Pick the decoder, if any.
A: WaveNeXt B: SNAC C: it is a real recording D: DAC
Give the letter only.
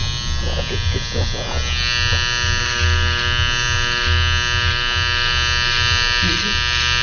C